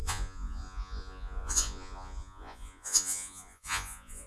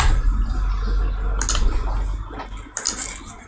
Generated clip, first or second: first